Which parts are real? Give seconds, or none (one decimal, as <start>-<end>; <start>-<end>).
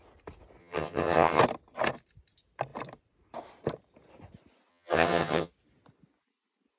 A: 0.0-0.6; 1.4-4.7; 5.5-6.8